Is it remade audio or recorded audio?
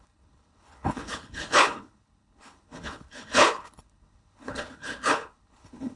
remade